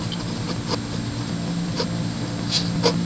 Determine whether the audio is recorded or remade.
recorded